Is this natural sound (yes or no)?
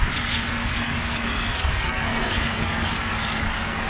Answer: no